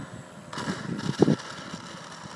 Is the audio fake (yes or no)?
no